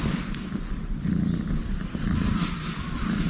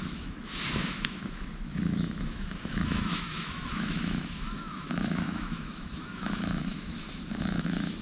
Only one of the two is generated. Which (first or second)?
second